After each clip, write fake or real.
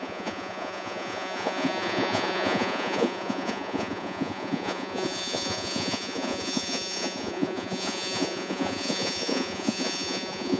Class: fake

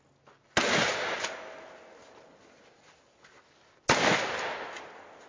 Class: real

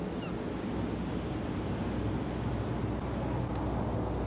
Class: real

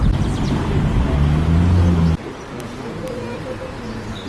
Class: real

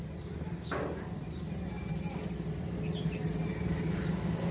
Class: real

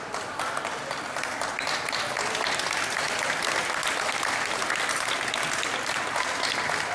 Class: real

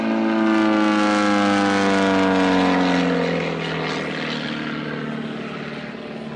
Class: real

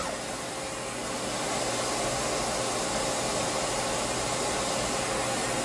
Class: real